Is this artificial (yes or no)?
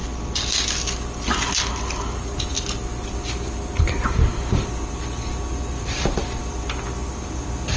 no